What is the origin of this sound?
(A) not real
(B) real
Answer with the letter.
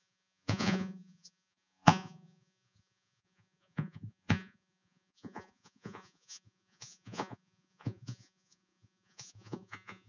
A